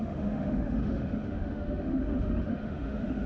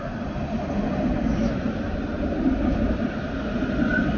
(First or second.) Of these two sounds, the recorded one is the second